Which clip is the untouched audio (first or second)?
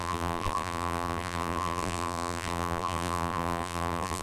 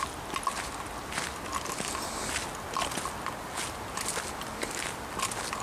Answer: second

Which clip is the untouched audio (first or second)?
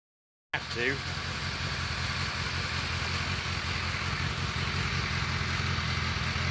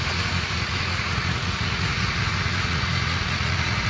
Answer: first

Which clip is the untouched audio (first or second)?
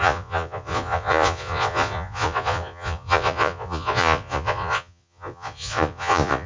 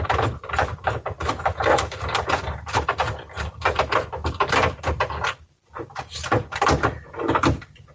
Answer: second